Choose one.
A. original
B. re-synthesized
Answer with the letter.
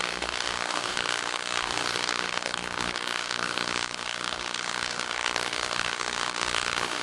B